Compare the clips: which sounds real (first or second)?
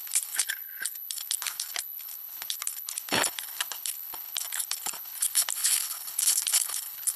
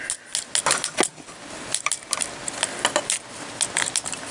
second